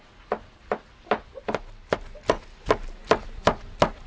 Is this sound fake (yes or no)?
no